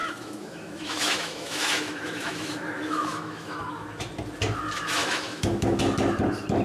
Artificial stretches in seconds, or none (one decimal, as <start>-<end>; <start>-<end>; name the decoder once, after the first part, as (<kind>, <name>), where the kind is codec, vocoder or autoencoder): 0.0-4.0 (autoencoder, DAC-VAE); 5.0-5.8